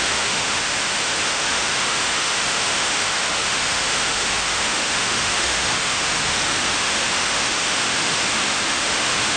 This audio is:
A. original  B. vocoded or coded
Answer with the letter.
B